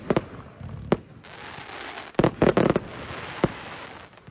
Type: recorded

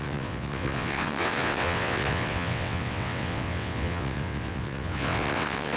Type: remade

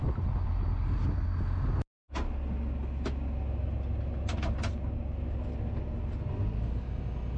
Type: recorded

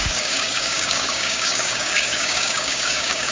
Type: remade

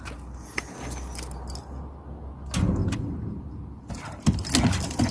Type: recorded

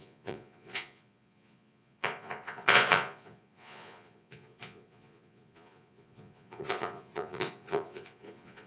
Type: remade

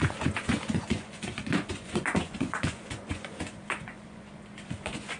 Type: remade